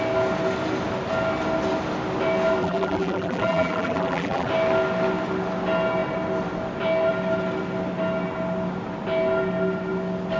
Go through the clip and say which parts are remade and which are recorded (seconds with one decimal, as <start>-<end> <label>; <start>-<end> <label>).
0.0-2.6 recorded; 2.6-4.5 remade; 4.5-10.4 recorded